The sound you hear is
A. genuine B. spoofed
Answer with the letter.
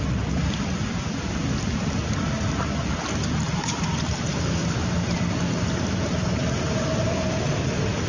A